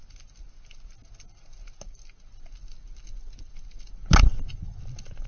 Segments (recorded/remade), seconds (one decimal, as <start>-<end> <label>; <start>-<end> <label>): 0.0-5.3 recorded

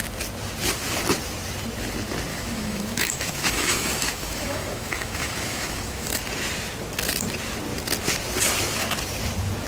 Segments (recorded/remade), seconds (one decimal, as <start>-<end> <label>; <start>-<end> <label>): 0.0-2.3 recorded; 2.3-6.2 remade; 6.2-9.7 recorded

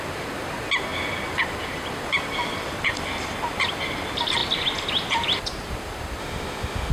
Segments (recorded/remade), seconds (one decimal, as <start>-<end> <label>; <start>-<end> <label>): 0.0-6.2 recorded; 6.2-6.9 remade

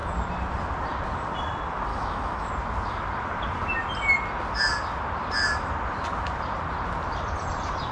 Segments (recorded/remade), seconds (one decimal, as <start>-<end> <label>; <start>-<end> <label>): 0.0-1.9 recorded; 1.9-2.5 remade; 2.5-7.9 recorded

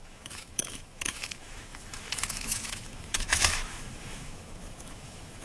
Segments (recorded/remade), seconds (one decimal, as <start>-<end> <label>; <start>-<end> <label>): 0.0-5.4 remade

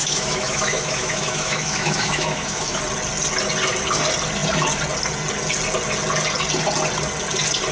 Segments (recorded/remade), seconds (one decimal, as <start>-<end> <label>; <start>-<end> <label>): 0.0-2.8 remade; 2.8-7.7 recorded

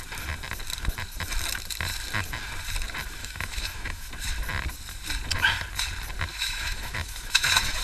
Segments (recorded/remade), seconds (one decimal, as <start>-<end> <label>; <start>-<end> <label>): 0.0-3.2 recorded; 3.2-4.1 remade; 4.1-6.3 recorded; 6.3-7.8 remade

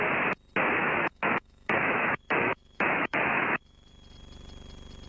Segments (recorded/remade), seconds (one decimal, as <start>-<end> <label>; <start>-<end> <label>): 0.0-0.8 recorded; 0.8-3.9 remade; 3.9-5.1 recorded